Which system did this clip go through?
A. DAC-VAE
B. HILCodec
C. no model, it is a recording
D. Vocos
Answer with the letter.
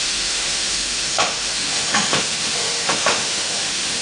A